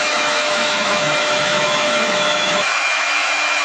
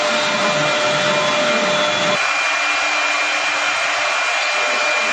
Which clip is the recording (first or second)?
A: second